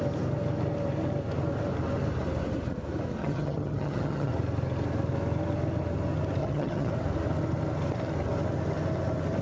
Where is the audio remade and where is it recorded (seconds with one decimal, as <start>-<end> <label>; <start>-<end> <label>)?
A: 0.0-3.2 recorded; 3.2-4.3 remade; 4.3-6.4 recorded; 6.4-6.9 remade; 6.9-9.4 recorded